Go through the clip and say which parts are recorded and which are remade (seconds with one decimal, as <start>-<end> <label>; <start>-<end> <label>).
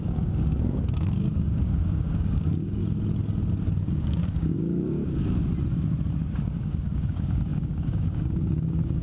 0.0-2.8 remade; 2.8-3.9 recorded; 3.9-5.5 remade; 5.5-6.4 recorded; 6.4-9.0 remade